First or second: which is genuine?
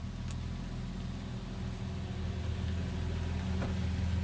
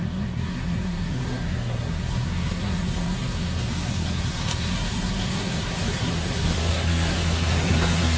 first